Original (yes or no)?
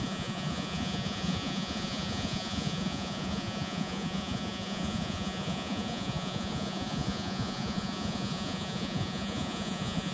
no